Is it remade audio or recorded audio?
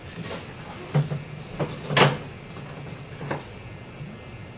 recorded